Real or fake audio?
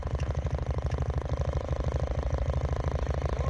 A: real